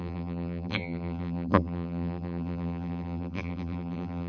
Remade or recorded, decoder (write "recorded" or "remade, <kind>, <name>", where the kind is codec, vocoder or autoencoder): remade, vocoder, BigVGAN v2